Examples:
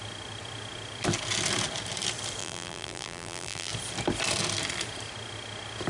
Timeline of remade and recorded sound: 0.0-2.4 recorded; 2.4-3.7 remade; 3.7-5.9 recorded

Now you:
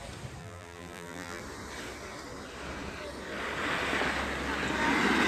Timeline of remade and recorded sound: 0.0-0.4 recorded; 0.4-1.4 remade; 1.4-5.3 recorded